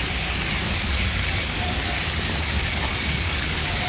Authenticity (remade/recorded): remade